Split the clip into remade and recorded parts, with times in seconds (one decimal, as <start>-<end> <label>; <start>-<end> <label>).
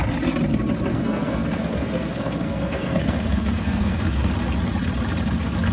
0.0-0.9 recorded; 0.9-4.3 remade; 4.3-5.7 recorded